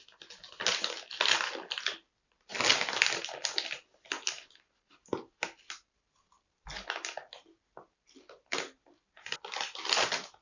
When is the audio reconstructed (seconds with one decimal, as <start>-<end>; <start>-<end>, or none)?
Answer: none